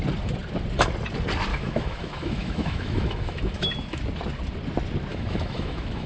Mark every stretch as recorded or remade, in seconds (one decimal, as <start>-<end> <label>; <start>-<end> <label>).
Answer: 0.0-1.5 recorded; 1.5-4.0 remade; 4.0-5.1 recorded; 5.1-6.1 remade